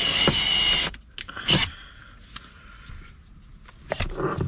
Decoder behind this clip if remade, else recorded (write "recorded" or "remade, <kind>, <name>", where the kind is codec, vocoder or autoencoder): recorded